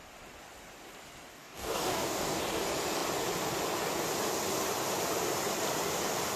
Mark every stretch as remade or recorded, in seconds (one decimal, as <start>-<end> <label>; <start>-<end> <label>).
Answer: 0.0-1.3 recorded; 1.3-2.4 remade; 2.4-6.4 recorded